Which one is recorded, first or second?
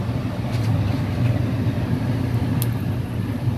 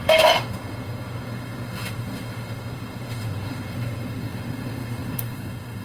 first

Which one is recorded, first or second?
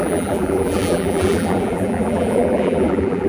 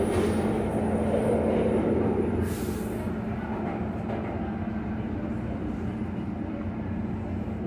second